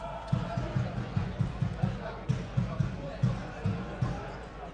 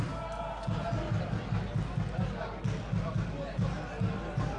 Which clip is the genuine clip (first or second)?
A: second